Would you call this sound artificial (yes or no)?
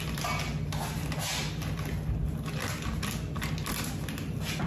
no